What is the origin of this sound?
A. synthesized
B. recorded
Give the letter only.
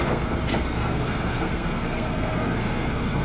A